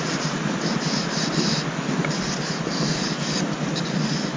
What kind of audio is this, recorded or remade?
recorded